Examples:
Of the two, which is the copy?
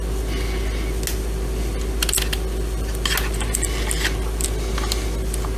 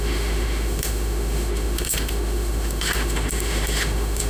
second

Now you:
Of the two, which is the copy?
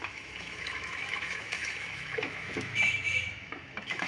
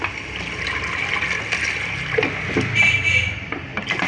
first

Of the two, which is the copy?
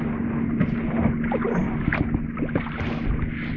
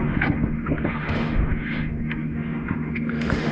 second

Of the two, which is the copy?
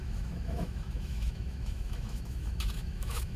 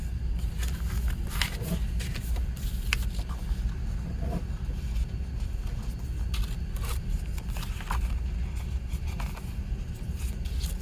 first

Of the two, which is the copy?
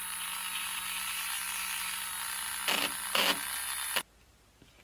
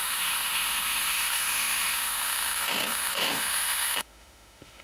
second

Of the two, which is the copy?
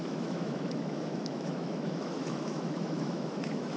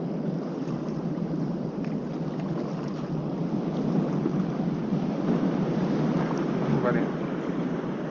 first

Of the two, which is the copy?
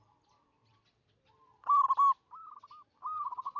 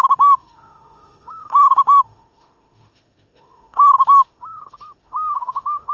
second